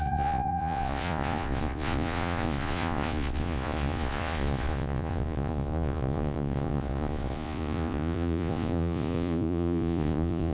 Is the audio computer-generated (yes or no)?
yes